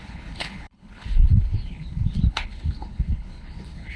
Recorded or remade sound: remade